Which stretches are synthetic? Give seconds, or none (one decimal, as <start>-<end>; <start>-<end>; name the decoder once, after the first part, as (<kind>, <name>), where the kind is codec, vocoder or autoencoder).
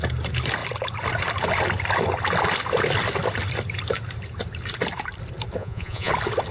5.6-6.1 (vocoder, Vocos)